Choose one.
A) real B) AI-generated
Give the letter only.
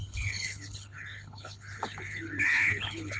B